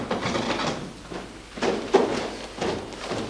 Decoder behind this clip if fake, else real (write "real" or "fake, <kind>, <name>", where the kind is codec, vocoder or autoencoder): fake, vocoder, BigVGAN v2